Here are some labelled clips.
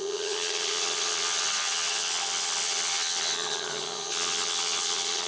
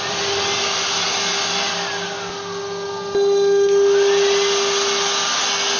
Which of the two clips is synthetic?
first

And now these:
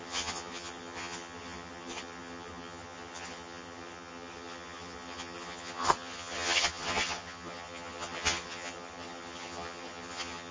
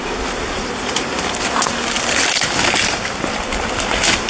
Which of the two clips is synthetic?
first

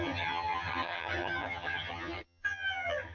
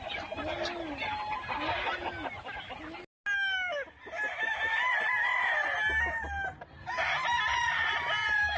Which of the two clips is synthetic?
first